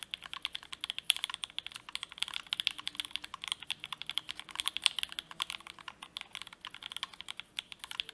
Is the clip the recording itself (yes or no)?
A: yes